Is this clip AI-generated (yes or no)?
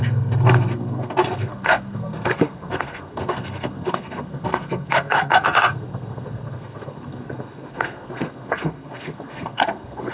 yes